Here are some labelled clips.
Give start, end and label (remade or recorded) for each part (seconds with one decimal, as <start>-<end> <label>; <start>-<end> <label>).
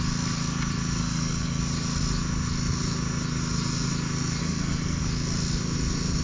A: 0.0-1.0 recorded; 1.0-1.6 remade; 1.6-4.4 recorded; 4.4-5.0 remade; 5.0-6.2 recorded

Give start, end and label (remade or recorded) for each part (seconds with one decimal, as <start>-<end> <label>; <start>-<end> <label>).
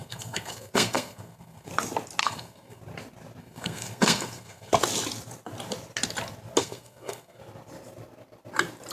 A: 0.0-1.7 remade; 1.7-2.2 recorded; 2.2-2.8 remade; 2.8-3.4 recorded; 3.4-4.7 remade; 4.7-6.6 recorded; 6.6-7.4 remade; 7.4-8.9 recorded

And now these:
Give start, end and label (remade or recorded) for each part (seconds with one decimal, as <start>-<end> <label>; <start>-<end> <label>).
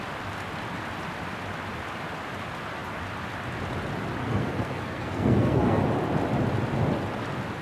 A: 0.0-4.2 recorded; 4.2-5.8 remade; 5.8-7.6 recorded